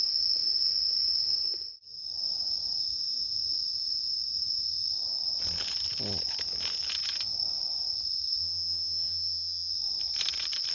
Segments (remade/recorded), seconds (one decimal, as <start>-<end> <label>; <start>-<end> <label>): 0.0-8.4 recorded; 8.4-9.7 remade; 9.7-10.7 recorded